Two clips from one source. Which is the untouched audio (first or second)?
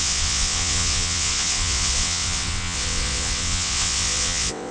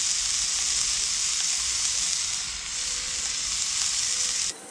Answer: second